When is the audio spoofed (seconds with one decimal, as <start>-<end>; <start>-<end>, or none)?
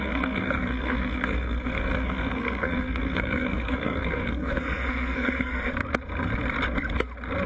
0.0-5.5